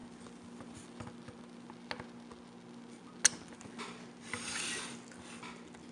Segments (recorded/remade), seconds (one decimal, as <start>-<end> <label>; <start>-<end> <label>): 0.0-5.9 recorded